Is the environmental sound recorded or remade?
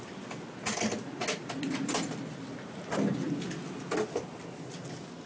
recorded